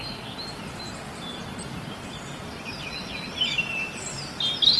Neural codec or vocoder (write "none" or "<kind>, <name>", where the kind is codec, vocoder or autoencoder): none